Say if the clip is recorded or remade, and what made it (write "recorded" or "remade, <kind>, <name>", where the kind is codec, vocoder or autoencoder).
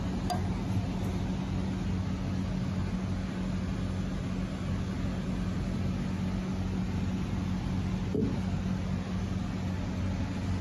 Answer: recorded